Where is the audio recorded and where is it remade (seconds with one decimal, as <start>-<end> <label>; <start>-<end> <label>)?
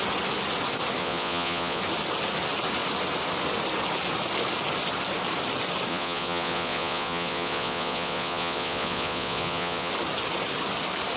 0.0-1.0 recorded; 1.0-1.8 remade; 1.8-5.9 recorded; 5.9-9.9 remade; 9.9-11.2 recorded